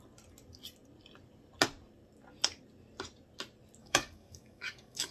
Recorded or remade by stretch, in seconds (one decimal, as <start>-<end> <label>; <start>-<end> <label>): 0.0-3.8 recorded; 3.8-5.1 remade